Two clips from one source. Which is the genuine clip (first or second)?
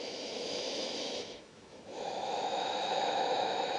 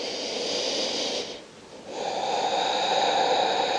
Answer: second